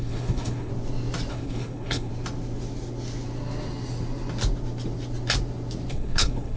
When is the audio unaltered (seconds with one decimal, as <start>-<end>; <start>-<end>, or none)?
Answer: 0.7-1.3; 2.1-5.9